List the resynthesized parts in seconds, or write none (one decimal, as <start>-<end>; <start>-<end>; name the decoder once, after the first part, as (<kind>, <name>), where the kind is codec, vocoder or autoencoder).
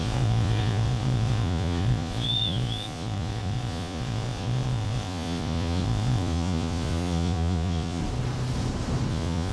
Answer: 0.0-8.0 (vocoder, Vocos); 9.1-9.5